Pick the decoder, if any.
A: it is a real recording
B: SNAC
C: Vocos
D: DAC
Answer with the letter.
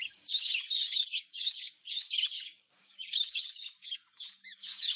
D